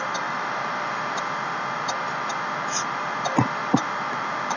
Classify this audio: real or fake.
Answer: real